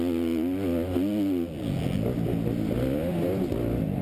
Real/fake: real